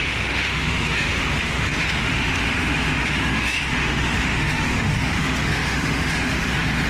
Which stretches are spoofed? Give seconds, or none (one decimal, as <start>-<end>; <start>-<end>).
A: 0.0-6.9